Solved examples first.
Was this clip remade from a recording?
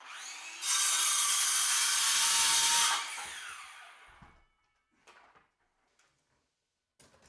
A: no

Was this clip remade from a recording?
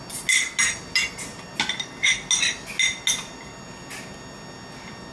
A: no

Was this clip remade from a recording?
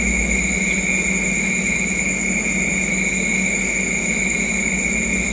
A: no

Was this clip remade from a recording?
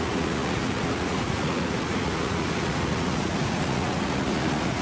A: yes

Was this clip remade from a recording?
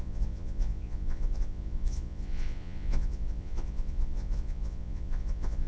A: yes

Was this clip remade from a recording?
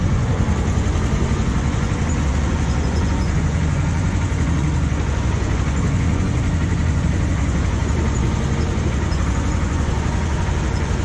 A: yes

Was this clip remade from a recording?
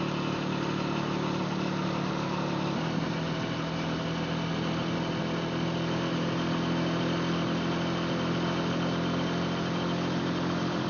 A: no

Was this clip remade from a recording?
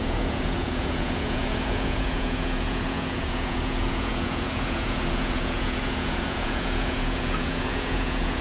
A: yes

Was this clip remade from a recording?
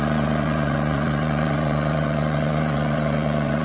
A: yes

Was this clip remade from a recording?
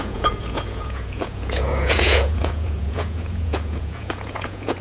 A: yes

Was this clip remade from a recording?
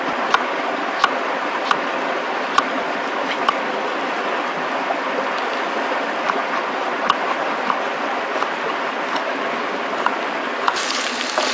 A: no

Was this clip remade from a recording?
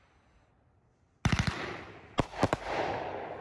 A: no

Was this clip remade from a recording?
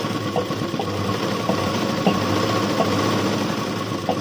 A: no